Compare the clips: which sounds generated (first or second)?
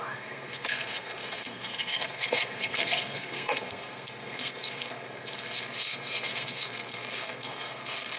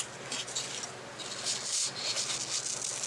first